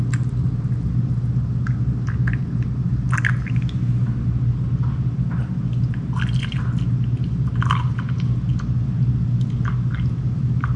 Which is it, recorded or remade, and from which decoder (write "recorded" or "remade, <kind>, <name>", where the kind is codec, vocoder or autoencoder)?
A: recorded